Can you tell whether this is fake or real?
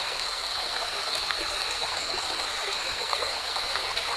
fake